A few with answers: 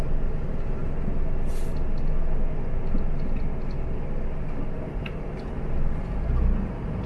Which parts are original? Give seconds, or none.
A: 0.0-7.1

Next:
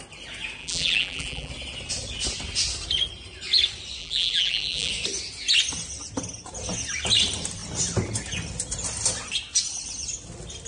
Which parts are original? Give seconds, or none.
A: 0.0-0.6; 1.5-4.0; 4.9-10.7

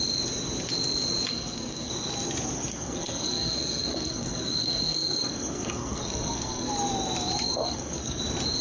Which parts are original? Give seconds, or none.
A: 0.0-1.3; 1.9-2.7; 6.7-7.6; 8.2-8.6

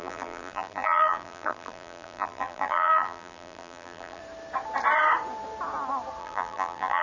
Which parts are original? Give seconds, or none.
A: 4.2-6.2

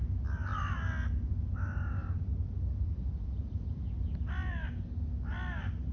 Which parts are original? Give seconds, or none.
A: 0.0-5.9